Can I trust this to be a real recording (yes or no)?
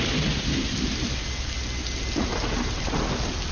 yes